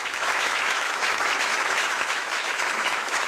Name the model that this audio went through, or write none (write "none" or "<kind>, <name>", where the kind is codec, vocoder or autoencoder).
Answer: autoencoder, DAC-VAE